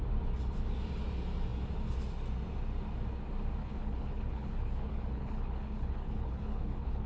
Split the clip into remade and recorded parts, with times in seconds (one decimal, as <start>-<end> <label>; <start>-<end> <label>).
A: 0.0-3.6 recorded; 3.6-7.1 remade

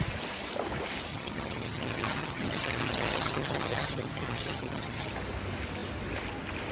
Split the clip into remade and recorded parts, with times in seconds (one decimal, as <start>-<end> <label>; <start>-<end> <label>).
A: 0.0-1.1 recorded; 1.1-5.1 remade; 5.1-6.7 recorded

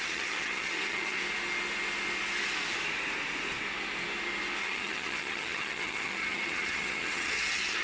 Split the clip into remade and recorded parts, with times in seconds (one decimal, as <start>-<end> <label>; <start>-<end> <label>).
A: 0.0-1.2 remade; 1.2-4.6 recorded; 4.6-7.8 remade

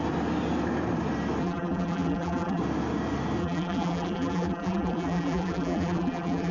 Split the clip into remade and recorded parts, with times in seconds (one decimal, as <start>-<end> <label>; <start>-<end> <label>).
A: 0.0-1.4 recorded; 1.4-2.6 remade; 2.6-3.4 recorded; 3.4-6.5 remade

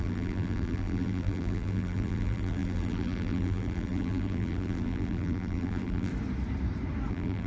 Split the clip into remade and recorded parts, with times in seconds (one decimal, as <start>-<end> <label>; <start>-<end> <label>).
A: 0.0-6.1 remade; 6.1-7.1 recorded; 7.1-7.5 remade

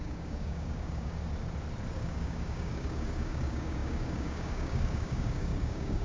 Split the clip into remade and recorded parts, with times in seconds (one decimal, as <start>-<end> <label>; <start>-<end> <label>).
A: 0.0-1.2 remade; 1.2-1.9 recorded; 1.9-6.0 remade

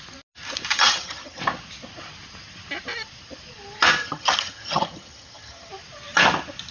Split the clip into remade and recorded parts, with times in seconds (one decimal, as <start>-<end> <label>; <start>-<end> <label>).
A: 0.0-0.7 recorded; 0.7-1.4 remade; 1.4-4.0 recorded; 4.0-5.7 remade; 5.7-6.7 recorded

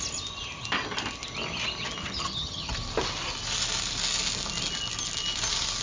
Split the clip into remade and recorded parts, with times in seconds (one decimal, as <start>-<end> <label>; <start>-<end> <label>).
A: 0.0-2.0 recorded; 2.0-2.7 remade; 2.7-5.8 recorded